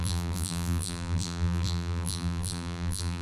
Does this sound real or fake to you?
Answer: fake